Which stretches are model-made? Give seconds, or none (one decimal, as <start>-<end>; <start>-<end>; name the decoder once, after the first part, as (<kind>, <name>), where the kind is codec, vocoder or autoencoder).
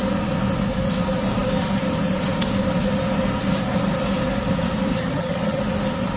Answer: 4.9-5.6 (vocoder, HiFi-GAN)